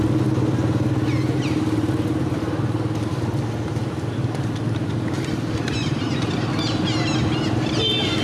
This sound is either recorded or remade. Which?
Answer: recorded